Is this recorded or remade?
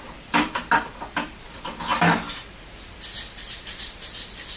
recorded